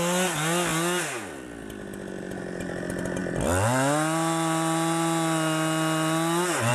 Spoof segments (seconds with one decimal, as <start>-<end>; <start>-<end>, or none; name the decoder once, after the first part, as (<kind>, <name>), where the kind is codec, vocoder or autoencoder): none